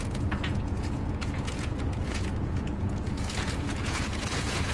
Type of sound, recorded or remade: remade